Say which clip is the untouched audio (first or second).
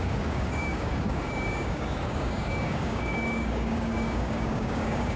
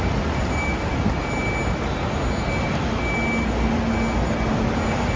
second